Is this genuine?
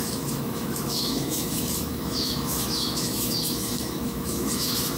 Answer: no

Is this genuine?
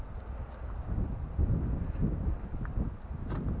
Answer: yes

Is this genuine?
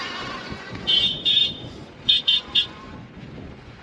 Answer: no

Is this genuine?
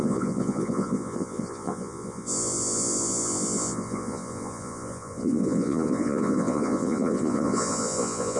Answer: no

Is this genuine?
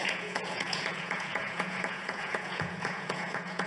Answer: no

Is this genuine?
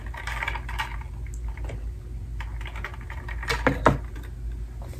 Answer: yes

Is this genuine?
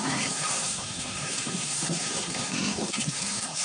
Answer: no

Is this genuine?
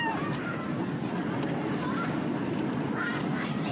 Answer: yes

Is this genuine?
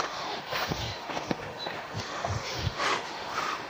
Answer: no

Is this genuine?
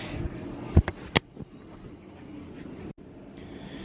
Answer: yes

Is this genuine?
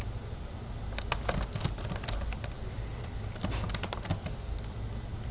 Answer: yes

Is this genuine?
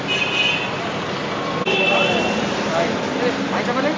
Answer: yes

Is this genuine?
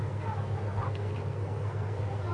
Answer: no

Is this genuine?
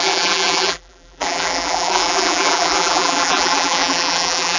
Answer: no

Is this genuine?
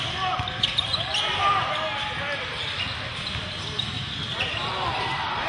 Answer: yes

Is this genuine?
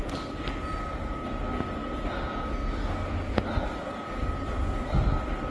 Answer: yes